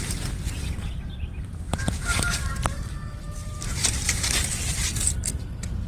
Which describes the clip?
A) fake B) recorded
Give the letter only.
A